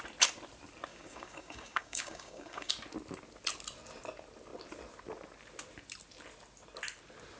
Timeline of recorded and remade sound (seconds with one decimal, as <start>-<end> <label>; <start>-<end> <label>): 0.0-0.9 recorded; 0.9-2.7 remade; 2.7-7.4 recorded